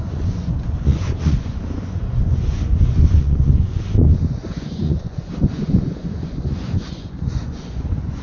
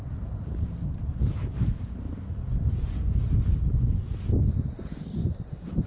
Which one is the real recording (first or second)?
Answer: second